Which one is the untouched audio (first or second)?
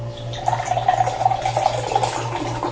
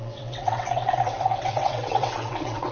first